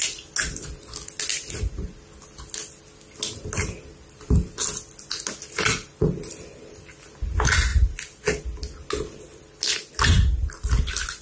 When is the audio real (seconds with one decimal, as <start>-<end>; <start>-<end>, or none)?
0.0-11.2